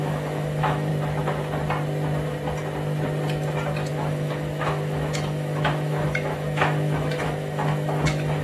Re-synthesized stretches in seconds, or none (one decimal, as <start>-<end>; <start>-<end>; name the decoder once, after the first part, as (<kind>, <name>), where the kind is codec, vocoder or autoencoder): 0.0-0.9 (autoencoder, DAC-VAE); 3.9-8.4

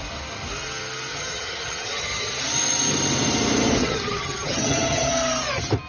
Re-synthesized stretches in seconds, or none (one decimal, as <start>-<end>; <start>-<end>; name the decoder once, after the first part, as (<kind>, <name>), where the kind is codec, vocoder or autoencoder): 1.1-2.3 (vocoder, HiFi-GAN); 3.8-5.1

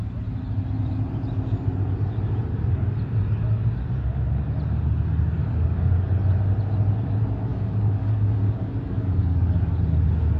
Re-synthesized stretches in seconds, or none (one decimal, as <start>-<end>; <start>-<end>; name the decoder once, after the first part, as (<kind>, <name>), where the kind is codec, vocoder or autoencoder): 5.4-5.9 (codec, DAC); 7.5-9.7